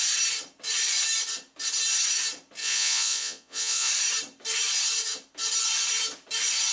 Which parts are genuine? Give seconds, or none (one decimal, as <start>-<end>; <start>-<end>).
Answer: 0.0-2.6; 3.9-6.7